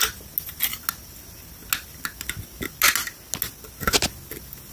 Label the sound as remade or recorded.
recorded